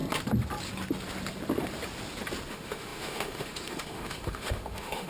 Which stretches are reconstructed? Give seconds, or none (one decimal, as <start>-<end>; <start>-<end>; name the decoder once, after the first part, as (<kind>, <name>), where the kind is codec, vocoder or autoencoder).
2.5-5.1 (autoencoder, DAC-VAE)